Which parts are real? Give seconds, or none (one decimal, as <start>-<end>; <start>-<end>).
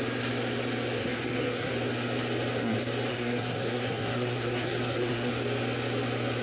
0.0-1.0; 1.7-3.1; 5.3-6.4